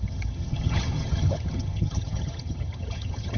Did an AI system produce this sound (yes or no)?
yes